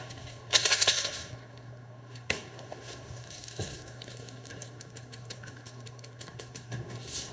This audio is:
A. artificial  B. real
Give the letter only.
A